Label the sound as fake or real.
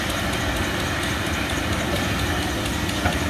real